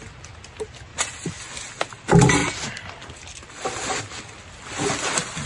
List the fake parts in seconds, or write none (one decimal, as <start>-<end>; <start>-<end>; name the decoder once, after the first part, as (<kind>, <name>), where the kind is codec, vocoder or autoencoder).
none